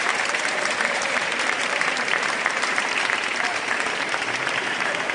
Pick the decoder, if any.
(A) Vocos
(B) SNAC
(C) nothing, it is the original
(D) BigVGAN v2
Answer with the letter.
D